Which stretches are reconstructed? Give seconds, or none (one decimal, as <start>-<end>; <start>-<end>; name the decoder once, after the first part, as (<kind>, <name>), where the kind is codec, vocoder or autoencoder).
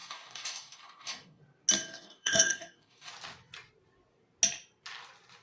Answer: 0.0-1.4 (codec, DAC); 1.9-3.1